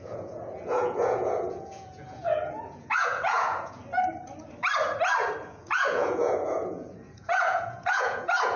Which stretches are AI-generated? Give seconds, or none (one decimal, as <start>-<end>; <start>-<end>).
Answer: 0.0-3.8; 5.4-8.6